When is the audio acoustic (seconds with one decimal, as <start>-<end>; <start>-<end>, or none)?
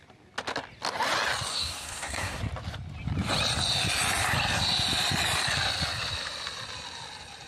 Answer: 0.0-1.5; 2.4-7.5